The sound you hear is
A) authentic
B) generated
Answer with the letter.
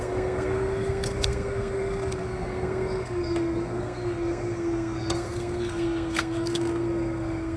B